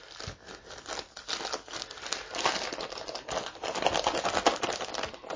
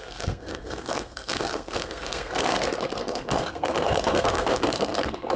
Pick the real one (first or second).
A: first